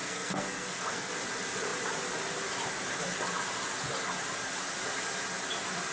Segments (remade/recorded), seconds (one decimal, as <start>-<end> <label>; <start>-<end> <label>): 0.0-1.1 remade; 1.1-5.9 recorded